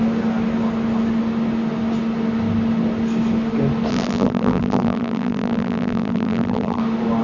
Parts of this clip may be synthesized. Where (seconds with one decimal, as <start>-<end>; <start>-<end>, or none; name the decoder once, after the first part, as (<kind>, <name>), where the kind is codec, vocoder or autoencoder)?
3.9-6.8 (vocoder, BigVGAN v2)